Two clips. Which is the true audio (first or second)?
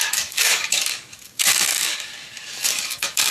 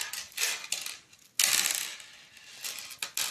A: second